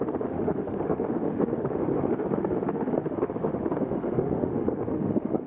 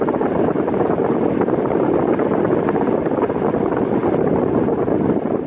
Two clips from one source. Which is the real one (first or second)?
second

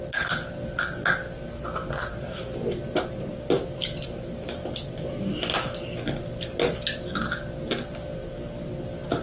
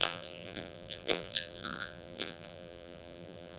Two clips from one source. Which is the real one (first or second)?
first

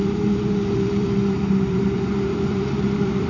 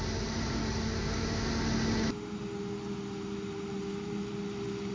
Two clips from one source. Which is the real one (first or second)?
second